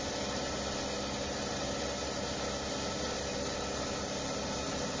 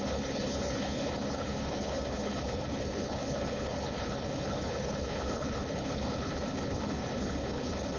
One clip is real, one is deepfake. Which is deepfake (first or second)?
second